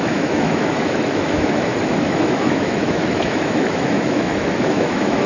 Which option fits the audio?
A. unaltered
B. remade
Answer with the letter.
B